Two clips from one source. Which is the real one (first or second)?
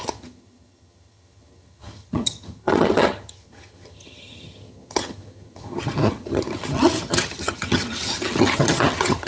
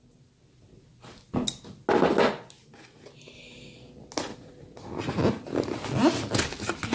second